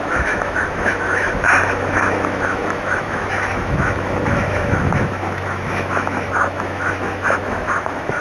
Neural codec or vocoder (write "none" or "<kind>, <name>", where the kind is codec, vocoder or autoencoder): autoencoder, DAC-VAE